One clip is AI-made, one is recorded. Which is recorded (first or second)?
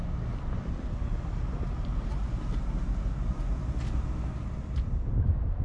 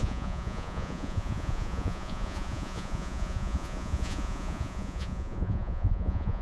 first